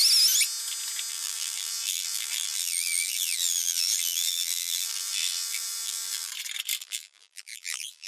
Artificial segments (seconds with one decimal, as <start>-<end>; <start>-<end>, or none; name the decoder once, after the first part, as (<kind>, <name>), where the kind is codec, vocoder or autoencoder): 1.1-6.3 (vocoder, BigVGAN v2); 6.8-8.1